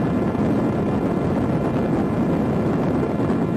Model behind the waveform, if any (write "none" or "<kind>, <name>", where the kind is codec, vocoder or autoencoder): none